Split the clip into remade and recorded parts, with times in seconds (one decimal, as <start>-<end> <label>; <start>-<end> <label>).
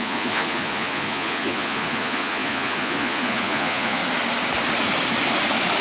0.0-4.0 remade; 4.0-5.8 recorded